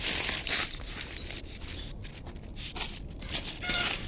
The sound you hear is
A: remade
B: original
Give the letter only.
B